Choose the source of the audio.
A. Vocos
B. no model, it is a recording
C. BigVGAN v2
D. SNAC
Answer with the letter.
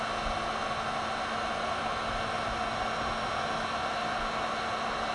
B